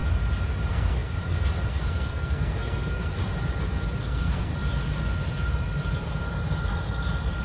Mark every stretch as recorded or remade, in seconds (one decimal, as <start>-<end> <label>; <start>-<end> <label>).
0.0-0.7 recorded; 0.7-1.2 remade; 1.2-1.7 recorded; 1.7-3.2 remade; 3.2-4.0 recorded; 4.0-4.5 remade; 4.5-7.4 recorded